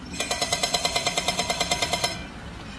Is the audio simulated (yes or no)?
no